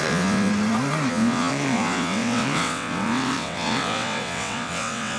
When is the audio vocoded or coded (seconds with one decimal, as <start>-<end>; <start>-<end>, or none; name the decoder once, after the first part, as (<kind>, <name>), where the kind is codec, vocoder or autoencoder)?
0.0-0.5 (vocoder, WaveNeXt); 1.1-5.2